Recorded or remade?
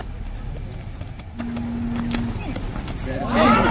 recorded